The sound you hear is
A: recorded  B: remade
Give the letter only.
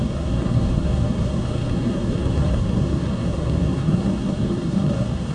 B